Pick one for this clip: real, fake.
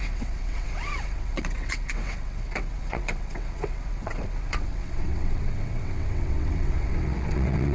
fake